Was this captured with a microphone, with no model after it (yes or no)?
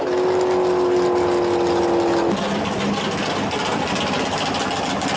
yes